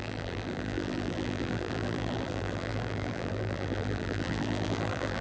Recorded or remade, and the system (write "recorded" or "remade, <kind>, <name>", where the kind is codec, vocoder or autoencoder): remade, vocoder, BigVGAN v2